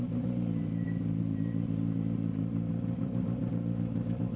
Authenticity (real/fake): fake